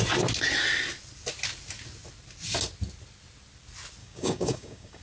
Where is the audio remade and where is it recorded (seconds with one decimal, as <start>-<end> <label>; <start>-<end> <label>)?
0.0-4.0 recorded; 4.0-5.0 remade